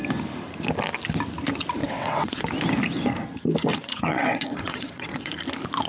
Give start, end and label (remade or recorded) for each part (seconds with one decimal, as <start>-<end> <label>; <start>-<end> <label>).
0.0-1.8 recorded; 1.8-2.4 remade; 2.4-3.7 recorded; 3.7-5.3 remade; 5.3-5.9 recorded